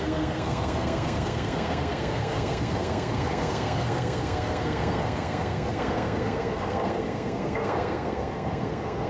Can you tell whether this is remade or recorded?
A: remade